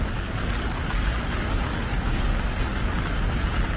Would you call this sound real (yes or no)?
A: no